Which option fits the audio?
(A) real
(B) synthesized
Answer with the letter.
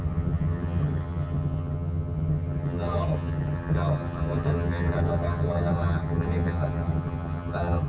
B